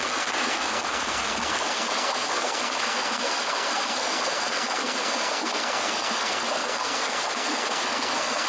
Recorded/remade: remade